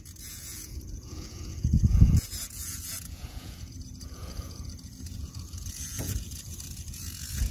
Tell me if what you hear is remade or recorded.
remade